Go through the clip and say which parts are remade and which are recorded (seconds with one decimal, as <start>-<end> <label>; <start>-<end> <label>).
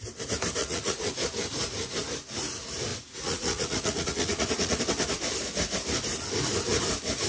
0.0-0.6 recorded; 0.6-1.1 remade; 1.1-2.9 recorded; 2.9-4.8 remade; 4.8-7.3 recorded